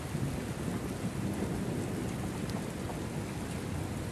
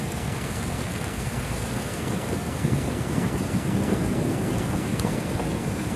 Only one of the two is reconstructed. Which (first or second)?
second